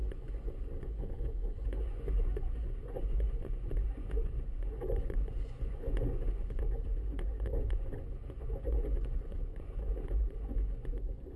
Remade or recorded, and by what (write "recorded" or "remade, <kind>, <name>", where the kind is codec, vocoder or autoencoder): remade, vocoder, Vocos